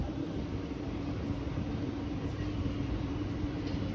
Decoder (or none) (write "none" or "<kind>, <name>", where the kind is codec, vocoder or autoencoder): none